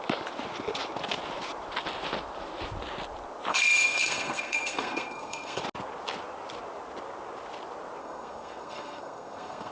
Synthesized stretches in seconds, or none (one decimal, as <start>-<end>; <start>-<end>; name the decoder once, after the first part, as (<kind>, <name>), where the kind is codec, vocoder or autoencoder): 3.5-5.6 (codec, SNAC); 8.0-9.7